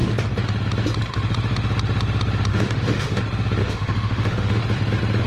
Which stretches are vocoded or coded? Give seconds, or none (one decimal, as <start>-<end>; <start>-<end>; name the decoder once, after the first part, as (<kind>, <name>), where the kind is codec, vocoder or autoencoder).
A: 2.5-3.2 (autoencoder, DAC-VAE); 3.6-4.6